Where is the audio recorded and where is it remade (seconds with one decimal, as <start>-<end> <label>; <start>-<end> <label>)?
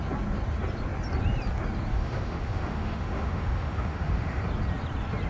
0.0-1.9 recorded; 1.9-4.4 remade; 4.4-5.3 recorded